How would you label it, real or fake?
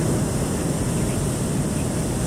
real